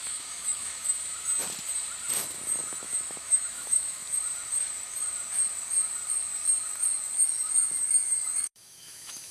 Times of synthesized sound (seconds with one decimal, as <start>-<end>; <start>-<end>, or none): 0.0-0.9; 2.8-4.0; 8.4-9.3